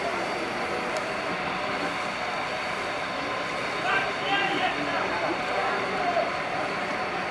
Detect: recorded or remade recorded